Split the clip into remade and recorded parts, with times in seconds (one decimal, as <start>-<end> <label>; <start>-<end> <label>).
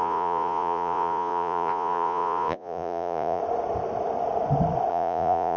0.0-3.4 remade; 3.4-4.9 recorded; 4.9-5.6 remade